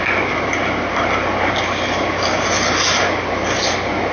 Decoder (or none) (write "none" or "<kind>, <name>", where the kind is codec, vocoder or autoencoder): none